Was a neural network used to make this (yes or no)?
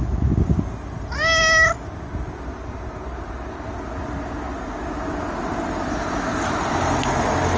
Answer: no